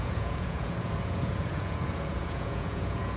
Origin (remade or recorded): remade